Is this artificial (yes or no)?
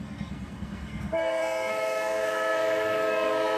yes